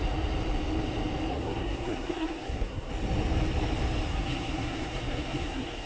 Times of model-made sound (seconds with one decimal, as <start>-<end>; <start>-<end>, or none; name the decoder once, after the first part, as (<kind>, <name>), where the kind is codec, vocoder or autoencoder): 1.3-2.9 (codec, SNAC); 4.1-5.9